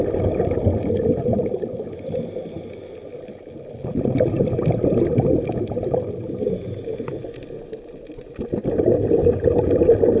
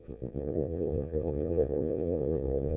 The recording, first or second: first